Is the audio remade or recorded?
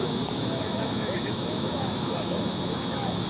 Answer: remade